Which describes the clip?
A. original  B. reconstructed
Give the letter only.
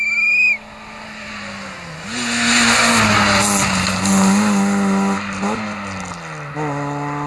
A